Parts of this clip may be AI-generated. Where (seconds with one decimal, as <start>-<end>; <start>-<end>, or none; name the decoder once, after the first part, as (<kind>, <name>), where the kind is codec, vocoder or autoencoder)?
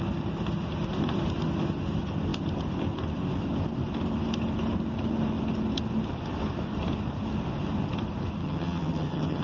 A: 8.4-9.4 (vocoder, HiFi-GAN)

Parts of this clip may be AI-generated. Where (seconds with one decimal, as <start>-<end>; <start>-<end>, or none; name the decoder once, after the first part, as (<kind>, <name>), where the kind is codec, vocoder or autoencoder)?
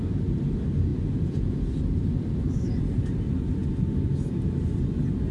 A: none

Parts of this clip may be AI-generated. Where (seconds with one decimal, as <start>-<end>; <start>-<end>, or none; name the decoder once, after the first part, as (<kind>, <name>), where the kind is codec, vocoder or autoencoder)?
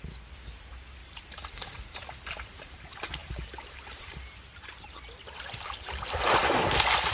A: 1.0-1.9 (vocoder, BigVGAN v2); 3.2-5.0